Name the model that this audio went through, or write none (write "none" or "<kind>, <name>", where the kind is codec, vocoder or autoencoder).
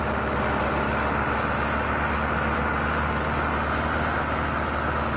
none